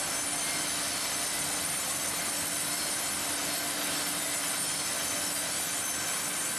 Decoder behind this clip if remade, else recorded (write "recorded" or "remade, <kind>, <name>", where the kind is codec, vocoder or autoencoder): recorded